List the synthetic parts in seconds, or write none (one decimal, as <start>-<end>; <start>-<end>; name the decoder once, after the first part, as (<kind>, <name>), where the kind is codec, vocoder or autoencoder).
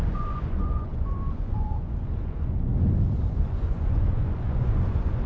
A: 0.0-2.7 (vocoder, Vocos); 3.3-5.3